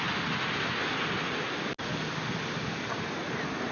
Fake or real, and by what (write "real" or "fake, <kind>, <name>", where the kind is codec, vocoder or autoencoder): real